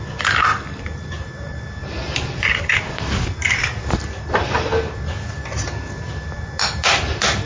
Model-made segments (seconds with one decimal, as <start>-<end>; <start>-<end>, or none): none